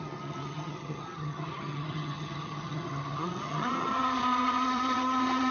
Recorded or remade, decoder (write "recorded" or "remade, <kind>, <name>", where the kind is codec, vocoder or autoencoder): remade, vocoder, HiFi-GAN